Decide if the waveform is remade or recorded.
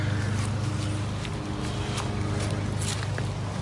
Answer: recorded